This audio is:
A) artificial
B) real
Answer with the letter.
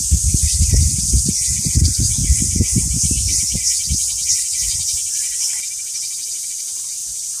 B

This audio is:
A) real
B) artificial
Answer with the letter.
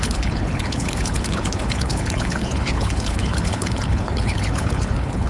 B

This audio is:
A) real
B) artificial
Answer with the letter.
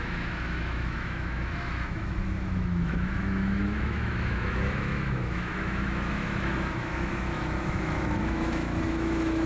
B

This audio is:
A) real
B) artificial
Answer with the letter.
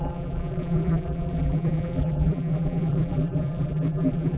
B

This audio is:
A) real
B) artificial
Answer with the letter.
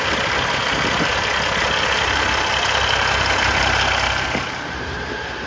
A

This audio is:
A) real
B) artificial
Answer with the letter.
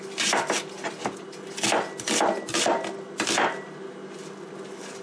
A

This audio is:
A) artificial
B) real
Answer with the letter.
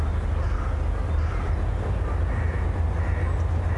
B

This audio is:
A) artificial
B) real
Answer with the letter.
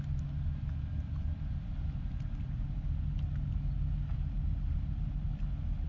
B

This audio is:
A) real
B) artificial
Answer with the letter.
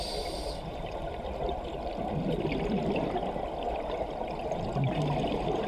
A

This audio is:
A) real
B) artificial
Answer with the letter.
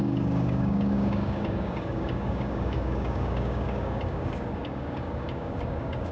B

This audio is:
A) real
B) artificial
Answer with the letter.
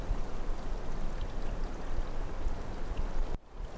B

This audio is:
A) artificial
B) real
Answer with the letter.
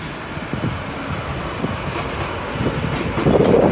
B